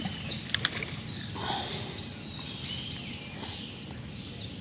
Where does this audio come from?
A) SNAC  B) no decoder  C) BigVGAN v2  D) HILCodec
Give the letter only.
B